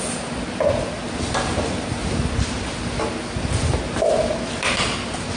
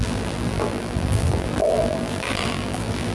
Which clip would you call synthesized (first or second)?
second